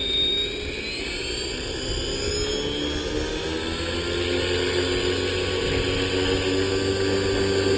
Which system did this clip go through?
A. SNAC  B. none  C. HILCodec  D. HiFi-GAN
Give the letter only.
B